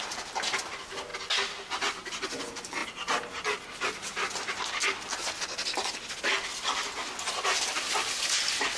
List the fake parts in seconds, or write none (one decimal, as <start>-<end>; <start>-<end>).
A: none